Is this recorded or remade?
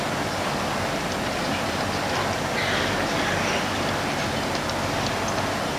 recorded